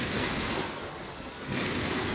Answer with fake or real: fake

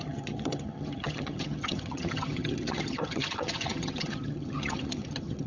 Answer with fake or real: fake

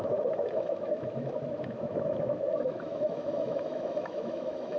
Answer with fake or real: fake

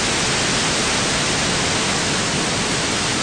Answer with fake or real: real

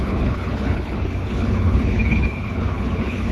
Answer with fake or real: fake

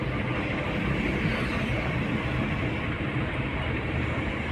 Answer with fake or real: real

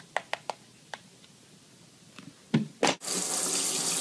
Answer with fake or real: real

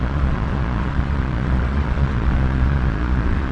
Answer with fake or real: fake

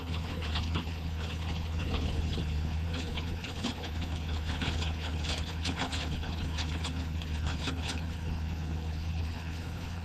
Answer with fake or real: fake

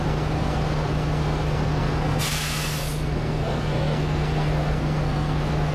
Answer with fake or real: fake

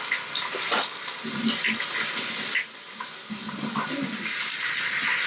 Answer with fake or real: real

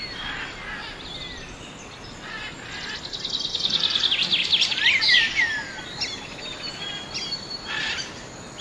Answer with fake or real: real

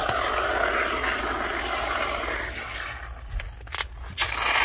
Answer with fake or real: real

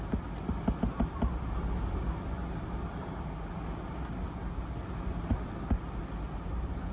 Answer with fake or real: real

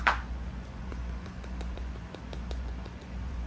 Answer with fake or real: fake